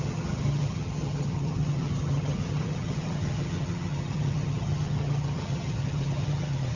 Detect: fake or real fake